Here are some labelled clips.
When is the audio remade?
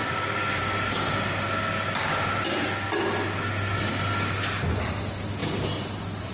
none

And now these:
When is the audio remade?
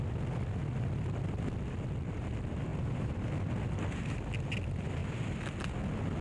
2.7-3.3